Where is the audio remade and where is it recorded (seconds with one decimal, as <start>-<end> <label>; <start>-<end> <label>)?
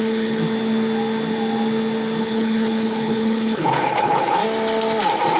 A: 0.0-0.4 remade; 0.4-2.2 recorded; 2.2-4.4 remade; 4.4-5.4 recorded